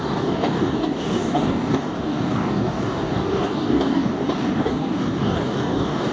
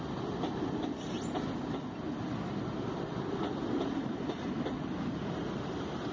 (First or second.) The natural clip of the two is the second